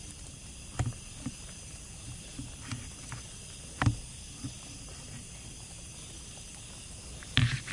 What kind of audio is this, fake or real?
real